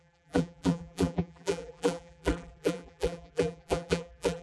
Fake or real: fake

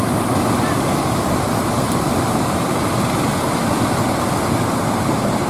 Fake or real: real